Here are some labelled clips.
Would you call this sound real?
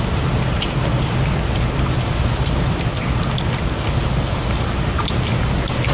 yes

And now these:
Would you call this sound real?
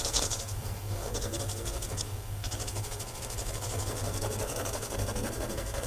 no